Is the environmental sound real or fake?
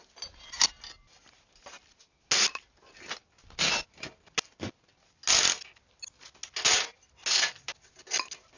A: real